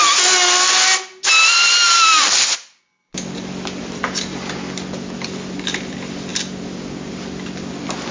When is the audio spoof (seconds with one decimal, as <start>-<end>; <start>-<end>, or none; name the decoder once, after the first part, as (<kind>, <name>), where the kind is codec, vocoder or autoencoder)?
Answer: none